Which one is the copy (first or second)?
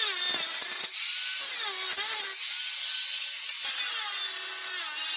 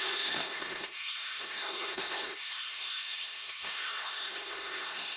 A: second